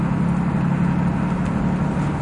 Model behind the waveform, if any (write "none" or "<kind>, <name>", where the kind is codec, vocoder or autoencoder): none